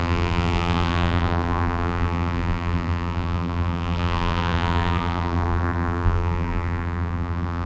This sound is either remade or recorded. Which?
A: remade